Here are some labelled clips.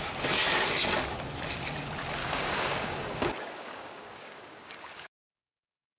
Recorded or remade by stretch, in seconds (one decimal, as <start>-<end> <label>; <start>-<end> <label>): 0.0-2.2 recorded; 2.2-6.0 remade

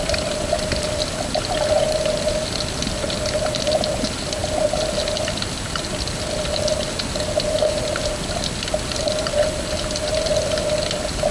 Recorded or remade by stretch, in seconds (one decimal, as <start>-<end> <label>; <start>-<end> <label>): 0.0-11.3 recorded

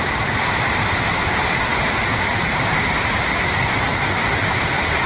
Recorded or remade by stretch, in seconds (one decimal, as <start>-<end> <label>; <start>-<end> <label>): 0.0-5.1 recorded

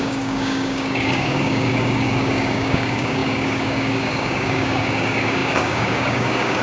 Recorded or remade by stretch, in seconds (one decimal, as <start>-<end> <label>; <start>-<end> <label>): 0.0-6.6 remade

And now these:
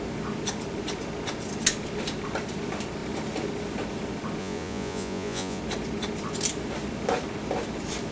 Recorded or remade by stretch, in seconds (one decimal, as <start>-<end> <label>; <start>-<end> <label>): 0.0-4.4 recorded; 4.4-5.6 remade; 5.6-8.1 recorded

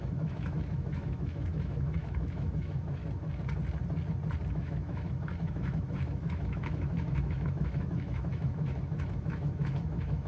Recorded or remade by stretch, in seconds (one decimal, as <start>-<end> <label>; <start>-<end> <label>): 0.0-3.0 remade; 3.0-4.5 recorded; 4.5-10.3 remade

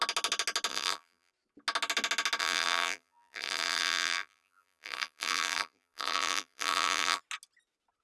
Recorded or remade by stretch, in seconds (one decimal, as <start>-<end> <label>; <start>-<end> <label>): 0.0-0.7 recorded; 0.7-1.3 remade; 1.3-2.4 recorded; 2.4-7.2 remade; 7.2-8.0 recorded

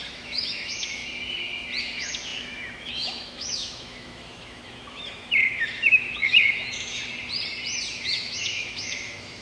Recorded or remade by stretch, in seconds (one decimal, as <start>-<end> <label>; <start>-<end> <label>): 0.0-1.0 remade; 1.0-1.8 recorded; 1.8-7.0 remade; 7.0-7.9 recorded; 7.9-9.4 remade